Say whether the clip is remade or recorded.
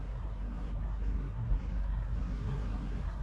remade